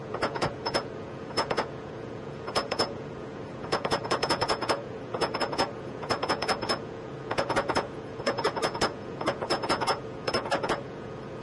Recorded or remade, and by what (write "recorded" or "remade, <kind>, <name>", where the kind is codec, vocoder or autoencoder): remade, vocoder, Vocos